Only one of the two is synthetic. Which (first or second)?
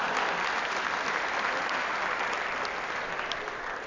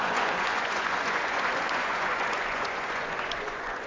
second